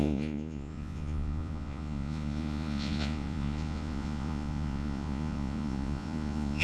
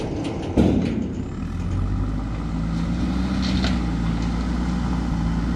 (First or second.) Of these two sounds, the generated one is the first